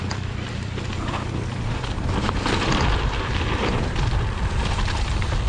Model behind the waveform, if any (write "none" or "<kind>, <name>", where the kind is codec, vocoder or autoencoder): vocoder, BigVGAN v2